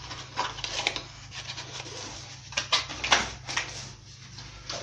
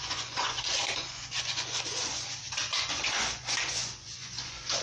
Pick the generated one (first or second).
second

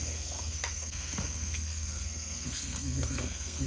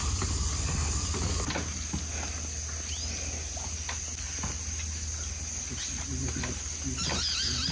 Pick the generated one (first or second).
first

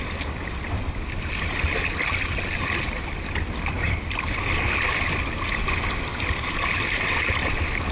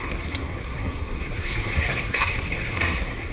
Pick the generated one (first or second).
second